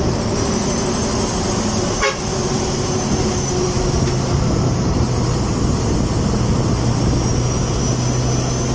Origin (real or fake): real